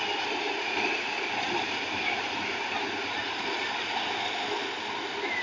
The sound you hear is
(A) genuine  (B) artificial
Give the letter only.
A